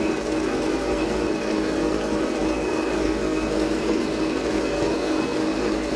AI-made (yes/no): yes